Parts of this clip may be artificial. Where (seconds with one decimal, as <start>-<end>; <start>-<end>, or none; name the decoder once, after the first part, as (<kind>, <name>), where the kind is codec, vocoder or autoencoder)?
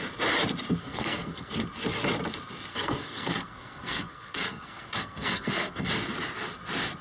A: 0.8-1.5 (codec, SNAC); 2.7-5.9